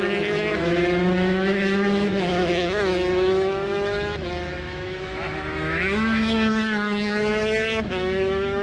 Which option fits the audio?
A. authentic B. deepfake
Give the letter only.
B